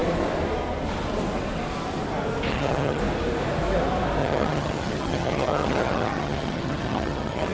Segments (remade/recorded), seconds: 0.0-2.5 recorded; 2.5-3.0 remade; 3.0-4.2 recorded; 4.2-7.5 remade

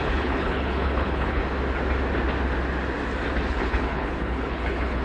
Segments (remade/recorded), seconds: 0.0-1.4 remade; 1.4-3.5 recorded; 3.5-5.0 remade

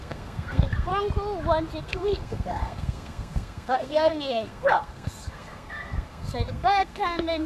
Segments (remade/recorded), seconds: 0.0-0.9 remade; 0.9-1.8 recorded; 1.8-7.5 remade